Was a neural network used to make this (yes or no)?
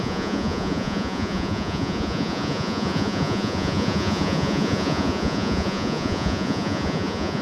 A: yes